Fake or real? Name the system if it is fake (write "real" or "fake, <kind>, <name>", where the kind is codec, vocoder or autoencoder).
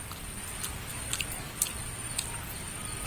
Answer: real